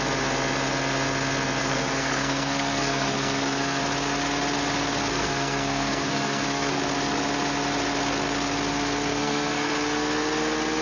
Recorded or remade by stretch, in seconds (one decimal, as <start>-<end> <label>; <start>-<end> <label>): 0.0-1.6 recorded; 1.6-3.8 remade; 3.8-5.1 recorded; 5.1-6.8 remade; 6.8-9.1 recorded; 9.1-9.7 remade; 9.7-10.8 recorded